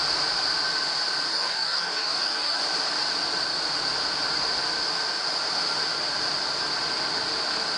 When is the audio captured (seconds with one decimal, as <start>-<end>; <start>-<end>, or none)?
0.0-1.3; 2.6-7.8